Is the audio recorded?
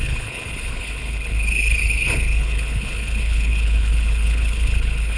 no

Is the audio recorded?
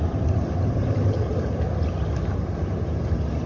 no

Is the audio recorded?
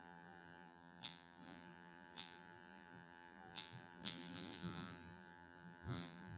no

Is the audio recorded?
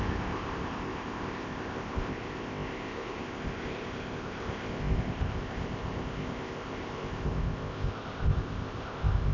no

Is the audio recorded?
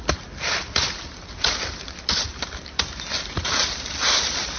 yes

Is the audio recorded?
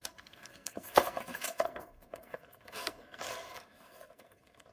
no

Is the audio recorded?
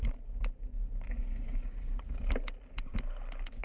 yes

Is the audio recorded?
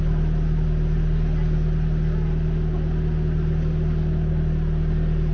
yes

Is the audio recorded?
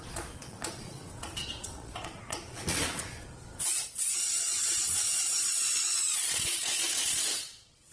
no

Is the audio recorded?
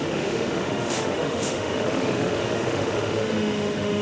no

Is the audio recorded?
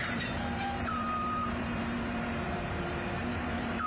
no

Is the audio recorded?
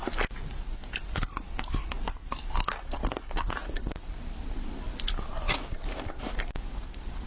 yes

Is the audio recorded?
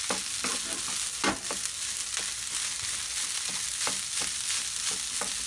yes